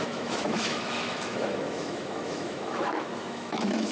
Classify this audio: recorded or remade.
remade